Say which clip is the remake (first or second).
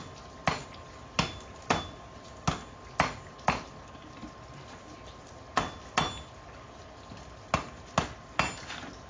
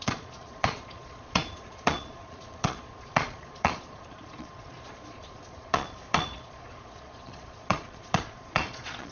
second